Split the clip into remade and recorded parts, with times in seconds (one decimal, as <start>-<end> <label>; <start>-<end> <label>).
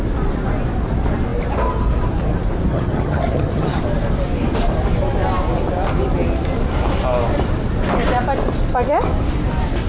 0.0-2.7 recorded; 2.7-3.8 remade; 3.8-9.9 recorded